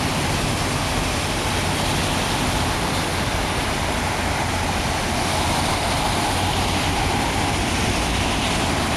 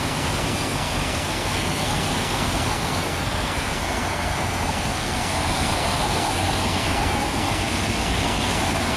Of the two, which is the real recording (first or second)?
first